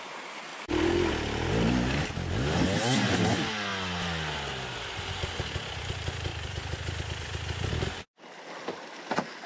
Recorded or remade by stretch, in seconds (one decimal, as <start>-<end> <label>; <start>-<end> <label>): 0.0-0.5 recorded; 0.5-1.1 remade; 1.1-6.3 recorded; 6.3-6.9 remade; 6.9-9.5 recorded